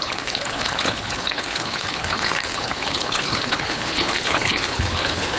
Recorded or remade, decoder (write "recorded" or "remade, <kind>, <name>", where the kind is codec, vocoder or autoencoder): remade, codec, HILCodec